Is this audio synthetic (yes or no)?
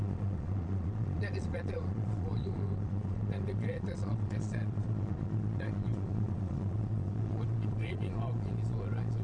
yes